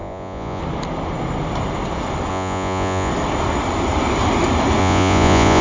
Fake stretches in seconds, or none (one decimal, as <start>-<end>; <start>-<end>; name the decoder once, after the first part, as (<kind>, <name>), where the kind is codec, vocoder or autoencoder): 0.0-0.6 (vocoder, Vocos); 2.3-3.1; 4.8-5.6